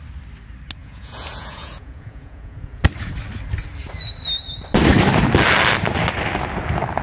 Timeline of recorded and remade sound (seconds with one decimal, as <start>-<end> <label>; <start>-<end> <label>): 0.0-0.8 recorded; 0.8-2.8 remade; 2.8-7.0 recorded